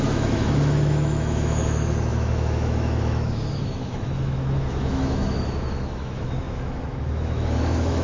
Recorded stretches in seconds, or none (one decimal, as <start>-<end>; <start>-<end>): none